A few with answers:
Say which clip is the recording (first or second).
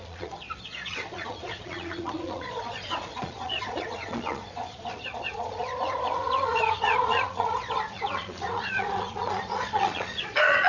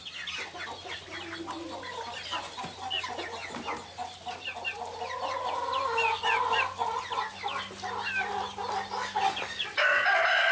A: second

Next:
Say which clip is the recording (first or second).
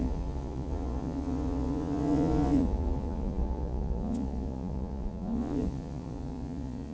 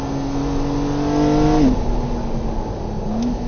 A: second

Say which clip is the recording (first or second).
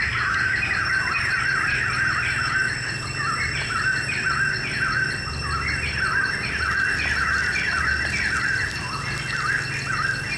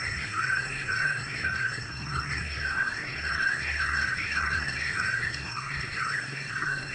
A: first